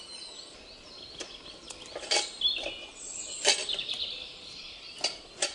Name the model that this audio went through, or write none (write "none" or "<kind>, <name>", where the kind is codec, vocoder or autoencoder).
none